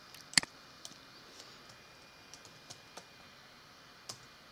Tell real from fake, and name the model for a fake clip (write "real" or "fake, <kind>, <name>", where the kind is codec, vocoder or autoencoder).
real